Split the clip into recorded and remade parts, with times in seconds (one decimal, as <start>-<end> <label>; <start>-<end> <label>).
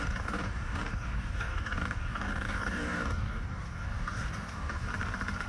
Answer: 0.0-4.9 remade; 4.9-5.5 recorded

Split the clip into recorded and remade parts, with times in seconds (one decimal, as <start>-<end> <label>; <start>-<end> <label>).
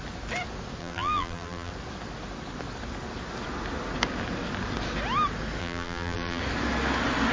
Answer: 0.0-0.8 recorded; 0.8-1.7 remade; 1.7-5.6 recorded; 5.6-6.4 remade; 6.4-7.3 recorded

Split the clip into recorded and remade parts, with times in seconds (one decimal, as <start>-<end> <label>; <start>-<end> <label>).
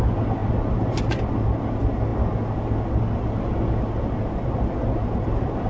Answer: 0.0-5.7 recorded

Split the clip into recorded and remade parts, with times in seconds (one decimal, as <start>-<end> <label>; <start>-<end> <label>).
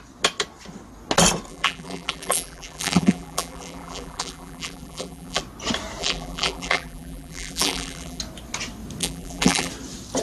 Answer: 0.0-1.5 recorded; 1.5-5.4 remade; 5.4-6.0 recorded; 6.0-8.2 remade; 8.2-9.0 recorded; 9.0-9.7 remade; 9.7-10.2 recorded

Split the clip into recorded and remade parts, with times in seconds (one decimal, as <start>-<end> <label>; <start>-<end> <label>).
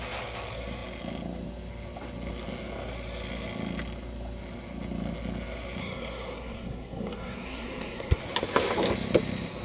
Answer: 0.0-5.8 recorded; 5.8-8.2 remade; 8.2-9.6 recorded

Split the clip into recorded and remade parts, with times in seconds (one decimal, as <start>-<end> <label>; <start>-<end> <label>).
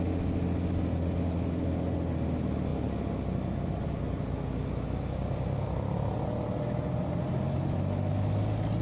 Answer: 0.0-8.8 recorded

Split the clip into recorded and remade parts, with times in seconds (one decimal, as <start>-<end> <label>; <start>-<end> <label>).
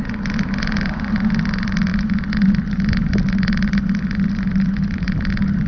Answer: 0.0-5.7 recorded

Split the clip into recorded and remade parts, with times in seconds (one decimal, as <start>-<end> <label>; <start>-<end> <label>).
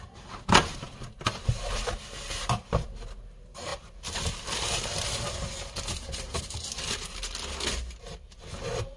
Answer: 0.0-9.0 recorded